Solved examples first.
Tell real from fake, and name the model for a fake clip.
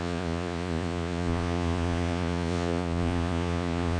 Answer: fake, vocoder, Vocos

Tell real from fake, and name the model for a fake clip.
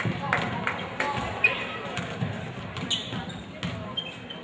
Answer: real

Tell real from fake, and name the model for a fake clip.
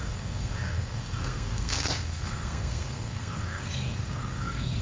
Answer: fake, codec, SNAC